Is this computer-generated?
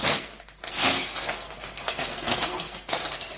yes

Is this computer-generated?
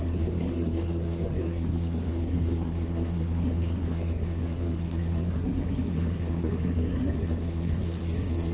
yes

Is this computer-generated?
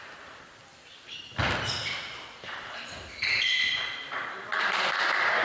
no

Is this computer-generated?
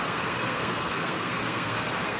yes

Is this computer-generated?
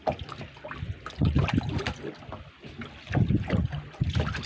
no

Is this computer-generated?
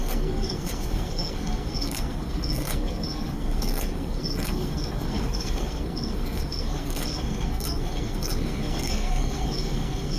yes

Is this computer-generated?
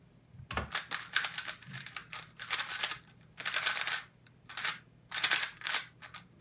no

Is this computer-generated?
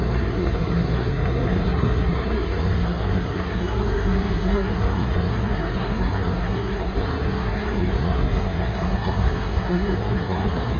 yes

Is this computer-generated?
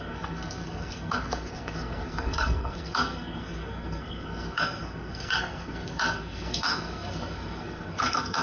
yes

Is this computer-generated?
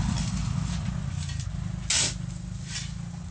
no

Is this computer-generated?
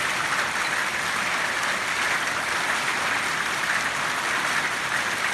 no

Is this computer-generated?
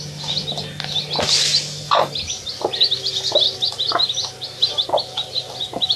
no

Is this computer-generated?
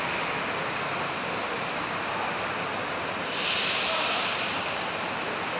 no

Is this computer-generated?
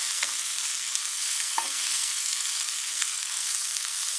yes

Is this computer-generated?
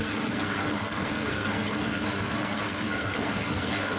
yes